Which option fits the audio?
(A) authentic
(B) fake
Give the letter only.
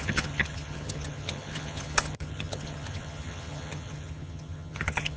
B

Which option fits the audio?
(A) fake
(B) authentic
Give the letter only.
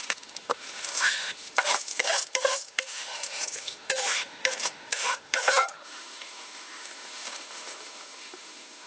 A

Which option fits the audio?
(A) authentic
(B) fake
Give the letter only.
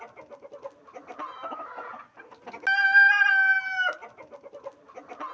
A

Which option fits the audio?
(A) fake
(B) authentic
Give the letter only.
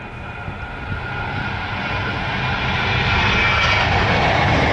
B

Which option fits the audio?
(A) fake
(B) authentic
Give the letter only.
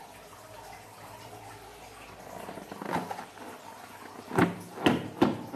B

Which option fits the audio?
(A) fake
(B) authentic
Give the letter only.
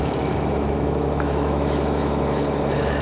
A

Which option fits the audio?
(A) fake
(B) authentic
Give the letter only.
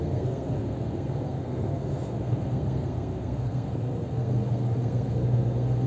A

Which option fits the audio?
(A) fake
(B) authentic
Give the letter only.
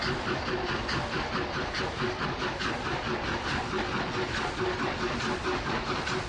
B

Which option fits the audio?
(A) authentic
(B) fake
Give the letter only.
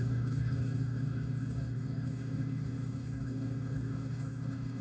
B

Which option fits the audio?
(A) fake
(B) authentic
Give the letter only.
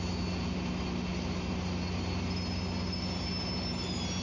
B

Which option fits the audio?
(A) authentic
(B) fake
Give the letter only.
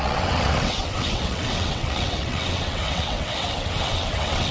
B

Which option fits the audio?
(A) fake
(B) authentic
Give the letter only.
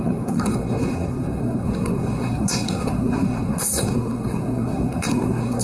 A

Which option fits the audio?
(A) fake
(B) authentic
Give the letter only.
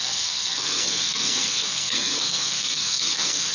A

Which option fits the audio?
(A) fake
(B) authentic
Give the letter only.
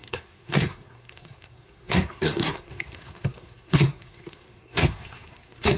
A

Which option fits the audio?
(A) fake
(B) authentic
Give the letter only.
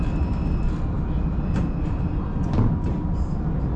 B